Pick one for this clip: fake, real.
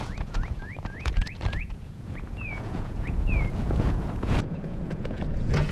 fake